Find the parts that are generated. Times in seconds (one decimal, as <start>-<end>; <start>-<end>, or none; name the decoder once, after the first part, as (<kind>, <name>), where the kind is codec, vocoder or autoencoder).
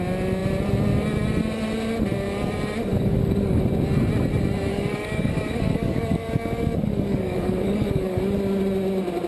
2.9-3.6 (codec, DAC); 4.7-8.2